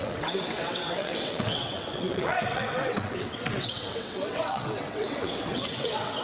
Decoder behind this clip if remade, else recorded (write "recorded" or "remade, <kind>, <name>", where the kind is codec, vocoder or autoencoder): remade, vocoder, WaveNeXt